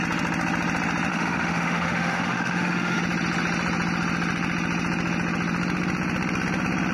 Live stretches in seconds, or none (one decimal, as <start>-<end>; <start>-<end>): 0.0-1.1; 3.0-6.9